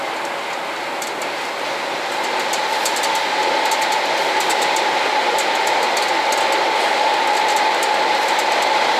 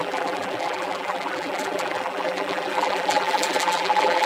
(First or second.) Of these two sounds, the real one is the first